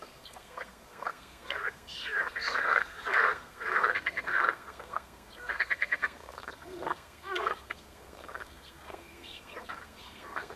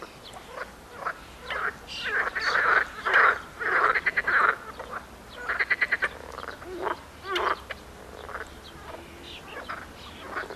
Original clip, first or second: second